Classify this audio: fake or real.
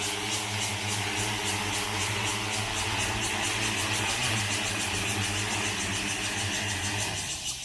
real